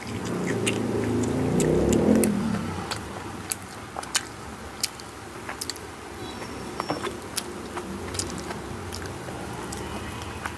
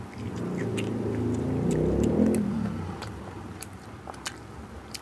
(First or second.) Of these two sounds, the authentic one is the first